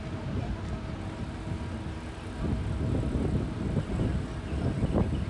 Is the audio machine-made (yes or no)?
no